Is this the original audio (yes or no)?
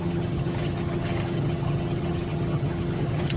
no